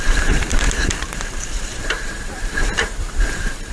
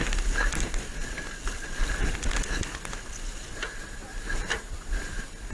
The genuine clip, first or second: second